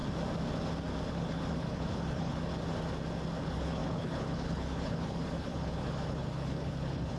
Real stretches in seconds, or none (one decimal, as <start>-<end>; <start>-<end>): 0.0-1.1; 2.5-3.4